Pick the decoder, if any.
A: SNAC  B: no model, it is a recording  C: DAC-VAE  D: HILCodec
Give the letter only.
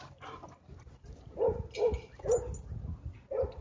B